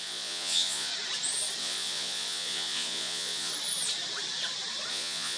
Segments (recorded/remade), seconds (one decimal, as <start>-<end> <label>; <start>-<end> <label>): 0.0-0.9 remade; 0.9-1.6 recorded; 1.6-3.5 remade; 3.5-4.9 recorded; 4.9-5.4 remade